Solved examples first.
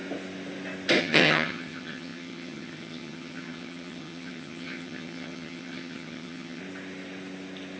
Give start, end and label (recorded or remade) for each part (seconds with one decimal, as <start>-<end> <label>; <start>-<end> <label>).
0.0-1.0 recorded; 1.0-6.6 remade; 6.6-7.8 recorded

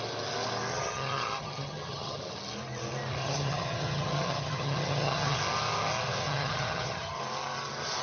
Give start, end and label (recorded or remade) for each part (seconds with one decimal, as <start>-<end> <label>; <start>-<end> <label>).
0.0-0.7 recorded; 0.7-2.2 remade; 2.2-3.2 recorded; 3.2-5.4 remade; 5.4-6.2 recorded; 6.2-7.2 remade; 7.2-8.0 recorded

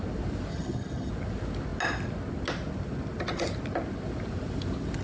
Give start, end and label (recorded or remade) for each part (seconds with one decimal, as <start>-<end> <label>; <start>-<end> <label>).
0.0-0.5 recorded; 0.5-1.1 remade; 1.1-5.0 recorded

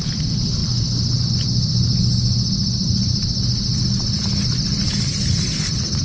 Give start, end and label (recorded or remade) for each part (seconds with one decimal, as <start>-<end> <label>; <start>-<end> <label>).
0.0-6.0 recorded

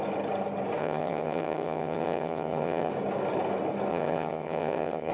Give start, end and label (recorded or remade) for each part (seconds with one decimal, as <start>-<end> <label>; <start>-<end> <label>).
0.0-0.8 recorded; 0.8-2.9 remade; 2.9-3.9 recorded; 3.9-5.1 remade

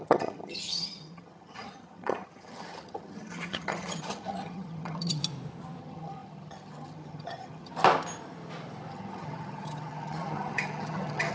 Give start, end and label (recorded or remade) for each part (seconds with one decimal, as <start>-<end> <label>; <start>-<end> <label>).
0.0-5.2 remade; 5.2-5.8 recorded; 5.8-7.7 remade; 7.7-8.9 recorded; 8.9-11.3 remade

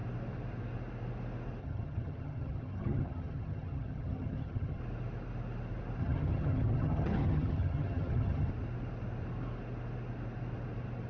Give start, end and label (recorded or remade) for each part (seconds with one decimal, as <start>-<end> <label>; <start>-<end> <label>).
0.0-1.6 recorded; 1.6-4.8 remade; 4.8-6.0 recorded; 6.0-8.5 remade; 8.5-11.1 recorded